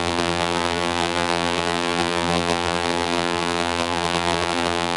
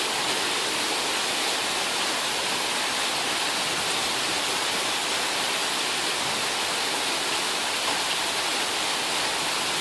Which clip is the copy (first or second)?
first